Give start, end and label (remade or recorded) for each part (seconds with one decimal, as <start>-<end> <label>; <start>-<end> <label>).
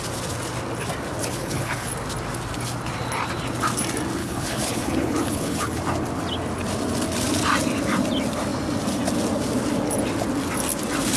0.0-1.2 recorded; 1.2-1.9 remade; 1.9-4.2 recorded; 4.2-5.8 remade; 5.8-11.2 recorded